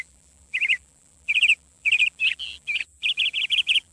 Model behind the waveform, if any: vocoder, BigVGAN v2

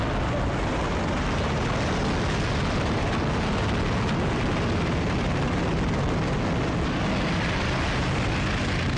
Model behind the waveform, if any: none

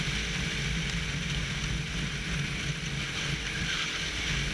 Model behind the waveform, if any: none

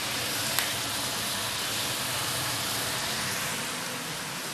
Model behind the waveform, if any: vocoder, BigVGAN v2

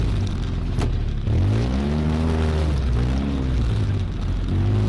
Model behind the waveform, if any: none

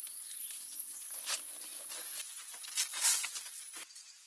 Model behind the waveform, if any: none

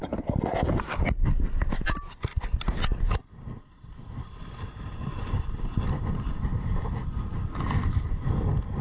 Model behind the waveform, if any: none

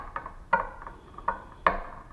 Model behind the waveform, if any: none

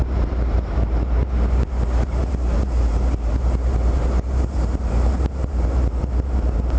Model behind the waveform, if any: vocoder, BigVGAN v2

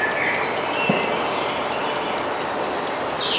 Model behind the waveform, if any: none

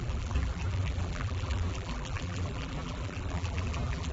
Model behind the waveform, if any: vocoder, BigVGAN v2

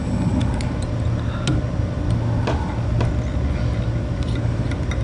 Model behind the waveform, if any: none